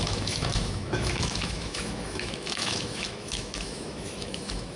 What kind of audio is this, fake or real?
fake